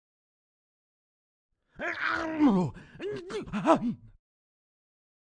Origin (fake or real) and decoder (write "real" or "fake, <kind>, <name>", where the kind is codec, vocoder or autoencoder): real